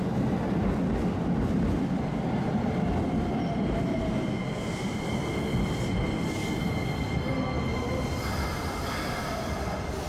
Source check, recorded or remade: recorded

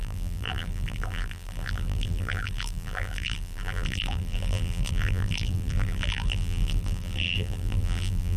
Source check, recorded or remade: remade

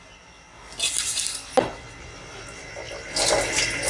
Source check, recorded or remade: recorded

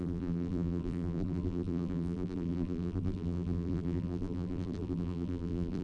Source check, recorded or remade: remade